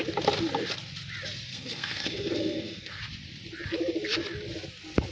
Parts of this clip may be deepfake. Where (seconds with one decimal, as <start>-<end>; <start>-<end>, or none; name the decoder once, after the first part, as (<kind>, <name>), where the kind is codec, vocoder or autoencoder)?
1.5-3.0 (codec, SNAC)